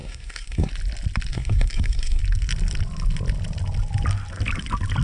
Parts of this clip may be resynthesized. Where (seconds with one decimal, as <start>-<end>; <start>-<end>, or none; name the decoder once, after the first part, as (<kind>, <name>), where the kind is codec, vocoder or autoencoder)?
0.0-0.7 (codec, SNAC); 1.3-2.2